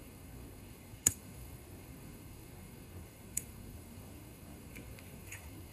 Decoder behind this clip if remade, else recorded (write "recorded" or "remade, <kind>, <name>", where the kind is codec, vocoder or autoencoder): remade, codec, SNAC